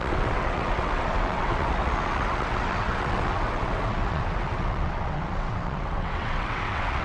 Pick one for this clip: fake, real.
fake